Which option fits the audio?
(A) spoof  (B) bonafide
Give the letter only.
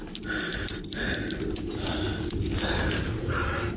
B